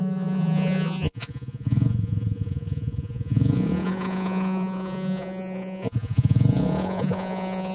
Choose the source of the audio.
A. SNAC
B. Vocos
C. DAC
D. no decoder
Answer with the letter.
B